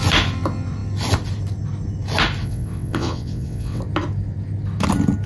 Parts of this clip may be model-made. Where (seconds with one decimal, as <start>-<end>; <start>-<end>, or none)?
2.4-3.8